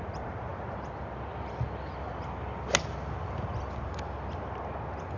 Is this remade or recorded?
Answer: recorded